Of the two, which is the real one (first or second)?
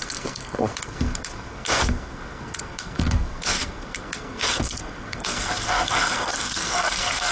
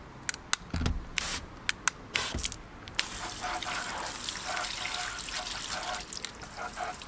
second